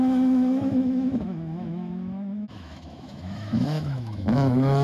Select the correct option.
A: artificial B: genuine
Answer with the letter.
A